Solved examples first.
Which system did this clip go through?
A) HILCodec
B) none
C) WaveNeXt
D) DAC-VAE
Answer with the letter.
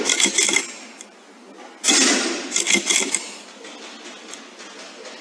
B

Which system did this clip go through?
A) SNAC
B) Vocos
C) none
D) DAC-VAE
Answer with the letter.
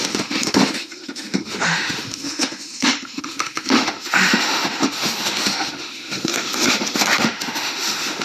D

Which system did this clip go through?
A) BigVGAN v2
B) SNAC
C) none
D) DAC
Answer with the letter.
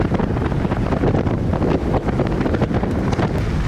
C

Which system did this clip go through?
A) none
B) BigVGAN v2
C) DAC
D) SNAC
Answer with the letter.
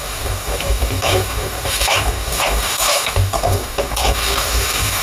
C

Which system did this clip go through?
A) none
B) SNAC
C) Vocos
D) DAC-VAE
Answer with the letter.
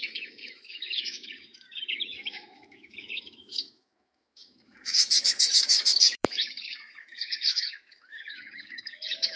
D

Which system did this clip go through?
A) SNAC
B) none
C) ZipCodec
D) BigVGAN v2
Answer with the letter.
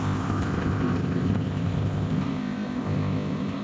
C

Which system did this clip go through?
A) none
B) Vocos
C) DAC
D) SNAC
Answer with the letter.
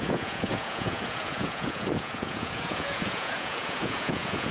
B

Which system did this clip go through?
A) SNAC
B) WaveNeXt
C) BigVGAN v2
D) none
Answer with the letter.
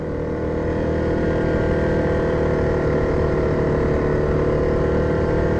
D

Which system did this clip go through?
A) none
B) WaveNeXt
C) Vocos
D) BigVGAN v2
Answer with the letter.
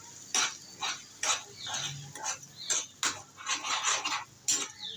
A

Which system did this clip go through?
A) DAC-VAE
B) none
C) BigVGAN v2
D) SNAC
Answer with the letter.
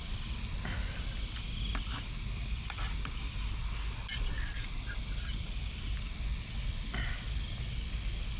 B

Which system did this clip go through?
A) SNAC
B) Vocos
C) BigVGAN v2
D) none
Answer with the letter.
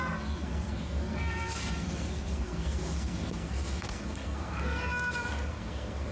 A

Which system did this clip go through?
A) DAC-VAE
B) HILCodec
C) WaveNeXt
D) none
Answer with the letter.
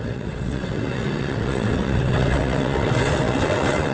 C